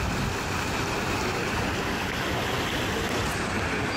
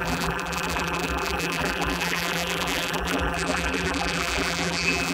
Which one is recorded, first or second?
first